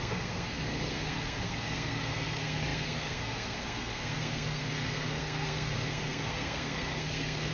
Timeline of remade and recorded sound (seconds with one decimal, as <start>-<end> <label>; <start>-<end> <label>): 0.0-7.5 remade

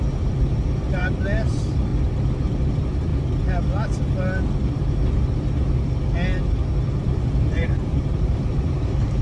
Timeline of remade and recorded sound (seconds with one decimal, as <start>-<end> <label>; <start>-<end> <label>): 0.0-1.9 remade; 1.9-2.7 recorded; 2.7-3.1 remade; 3.1-7.0 recorded; 7.0-9.2 remade

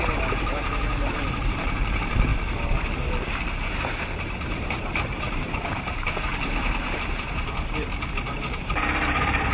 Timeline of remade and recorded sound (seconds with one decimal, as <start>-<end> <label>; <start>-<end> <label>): 0.0-2.3 remade; 2.3-4.0 recorded; 4.0-9.5 remade

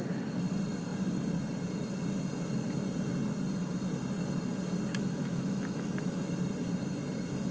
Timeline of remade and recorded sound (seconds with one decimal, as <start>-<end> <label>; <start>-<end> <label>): 0.0-4.9 recorded; 4.9-6.2 remade; 6.2-7.5 recorded

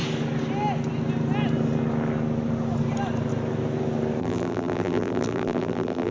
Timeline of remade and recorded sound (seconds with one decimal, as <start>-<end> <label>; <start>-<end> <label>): 0.0-4.2 recorded; 4.2-6.1 remade

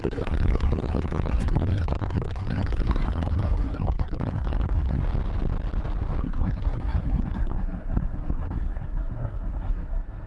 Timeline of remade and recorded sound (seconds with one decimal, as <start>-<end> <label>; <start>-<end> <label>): 0.0-5.0 remade; 5.0-6.2 recorded; 6.2-10.3 remade